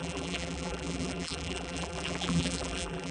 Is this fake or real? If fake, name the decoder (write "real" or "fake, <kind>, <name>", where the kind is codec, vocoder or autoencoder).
fake, vocoder, BigVGAN v2